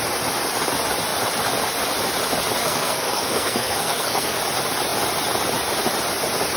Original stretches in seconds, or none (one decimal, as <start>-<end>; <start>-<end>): 0.0-2.6; 4.4-6.6